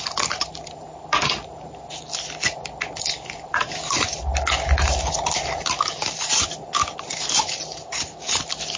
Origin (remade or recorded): recorded